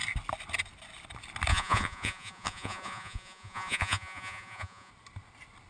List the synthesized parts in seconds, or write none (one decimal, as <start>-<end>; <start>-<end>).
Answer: 1.5-4.9